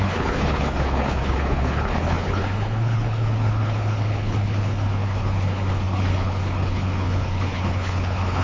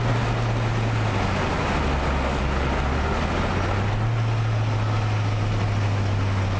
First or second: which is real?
second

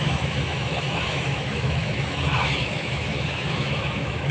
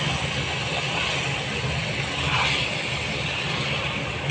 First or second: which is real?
second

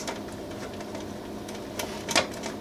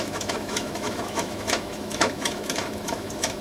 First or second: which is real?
first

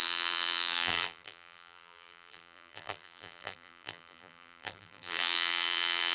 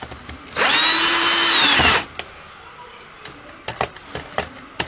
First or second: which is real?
second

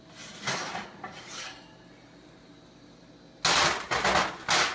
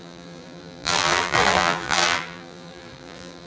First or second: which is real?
first